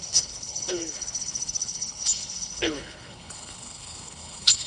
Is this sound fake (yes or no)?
yes